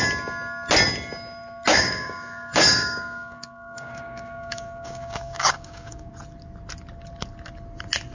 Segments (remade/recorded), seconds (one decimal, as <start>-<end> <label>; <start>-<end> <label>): 0.0-1.7 recorded; 1.7-6.1 remade; 6.1-8.1 recorded